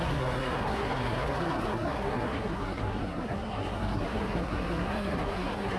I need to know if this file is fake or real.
fake